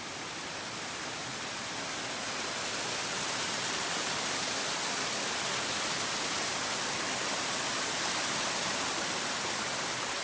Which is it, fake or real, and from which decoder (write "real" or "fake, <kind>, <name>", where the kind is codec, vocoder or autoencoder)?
real